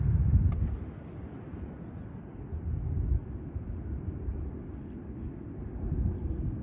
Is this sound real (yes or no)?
yes